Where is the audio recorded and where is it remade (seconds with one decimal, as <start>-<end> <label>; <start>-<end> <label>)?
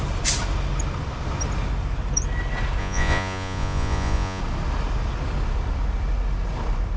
0.0-2.8 recorded; 2.8-4.4 remade; 4.4-7.0 recorded